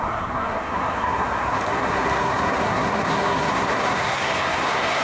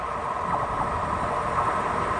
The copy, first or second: first